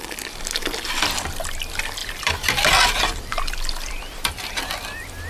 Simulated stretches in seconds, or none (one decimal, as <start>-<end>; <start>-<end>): 2.0-4.6